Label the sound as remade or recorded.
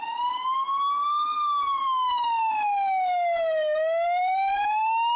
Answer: recorded